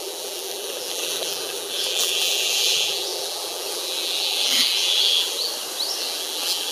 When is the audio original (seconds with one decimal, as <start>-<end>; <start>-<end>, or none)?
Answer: 5.5-6.0